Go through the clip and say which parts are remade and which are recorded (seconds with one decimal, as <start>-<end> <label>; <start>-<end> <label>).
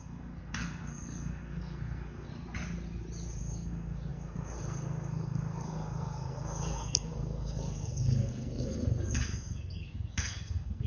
0.0-2.3 remade; 2.3-3.4 recorded; 3.4-10.9 remade